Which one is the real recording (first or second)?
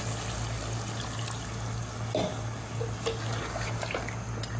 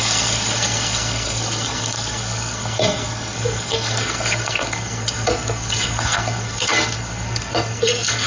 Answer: first